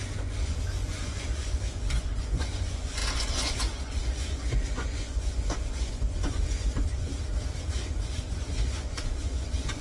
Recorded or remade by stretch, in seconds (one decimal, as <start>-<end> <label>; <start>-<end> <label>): 0.0-7.1 remade; 7.1-7.6 recorded; 7.6-9.8 remade